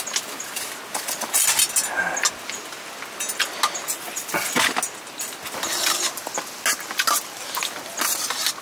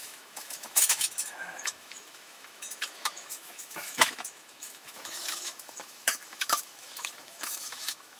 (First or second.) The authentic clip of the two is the first